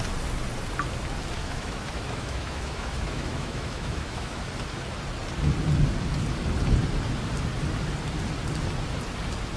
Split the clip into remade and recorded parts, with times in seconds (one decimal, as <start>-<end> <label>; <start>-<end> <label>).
0.0-1.4 recorded; 1.4-4.4 remade; 4.4-9.6 recorded